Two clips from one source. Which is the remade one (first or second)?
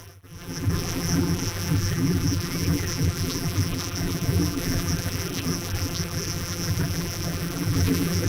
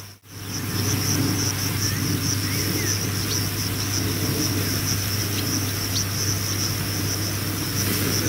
first